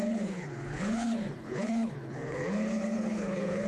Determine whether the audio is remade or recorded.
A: remade